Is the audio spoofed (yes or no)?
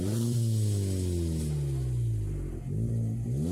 no